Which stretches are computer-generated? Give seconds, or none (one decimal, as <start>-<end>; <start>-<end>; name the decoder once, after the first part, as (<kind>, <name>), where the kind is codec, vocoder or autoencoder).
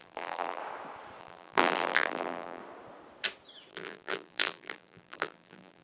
0.0-0.6 (vocoder, BigVGAN v2); 1.2-2.6; 3.7-5.8